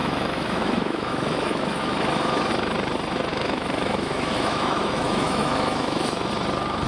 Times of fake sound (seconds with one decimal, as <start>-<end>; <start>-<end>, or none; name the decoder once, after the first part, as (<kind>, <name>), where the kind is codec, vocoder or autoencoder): 0.0-2.5 (autoencoder, DAC-VAE); 3.3-6.3